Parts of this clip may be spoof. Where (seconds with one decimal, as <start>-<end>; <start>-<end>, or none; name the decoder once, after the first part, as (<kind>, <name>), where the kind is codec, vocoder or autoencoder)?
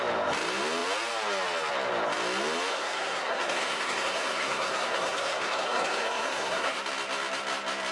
2.7-6.8 (codec, SNAC)